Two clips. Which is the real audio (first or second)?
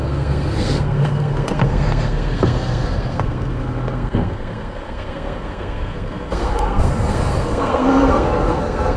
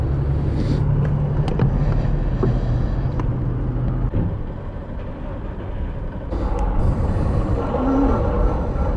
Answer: second